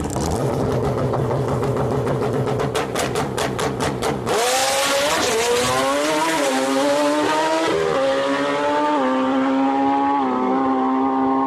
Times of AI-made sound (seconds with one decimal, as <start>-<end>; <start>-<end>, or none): 4.6-5.3; 6.2-7.7